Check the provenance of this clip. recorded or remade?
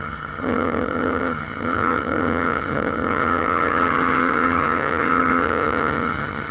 remade